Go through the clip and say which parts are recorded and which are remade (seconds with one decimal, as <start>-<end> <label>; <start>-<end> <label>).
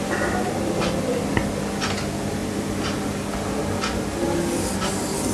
0.0-5.3 recorded